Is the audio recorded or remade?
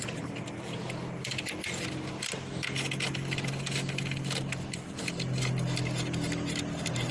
recorded